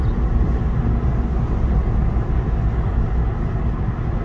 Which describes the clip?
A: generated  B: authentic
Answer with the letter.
B